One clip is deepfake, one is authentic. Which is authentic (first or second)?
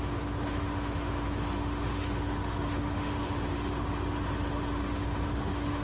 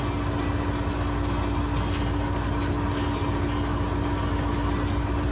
second